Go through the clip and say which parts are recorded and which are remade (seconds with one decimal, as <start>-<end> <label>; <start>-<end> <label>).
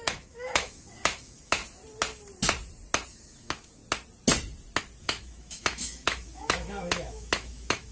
0.0-1.6 remade; 1.6-3.1 recorded; 3.1-3.8 remade; 3.8-5.0 recorded; 5.0-7.9 remade